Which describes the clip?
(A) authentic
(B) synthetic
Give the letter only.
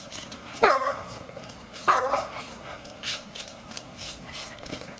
B